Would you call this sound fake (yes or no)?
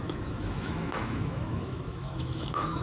yes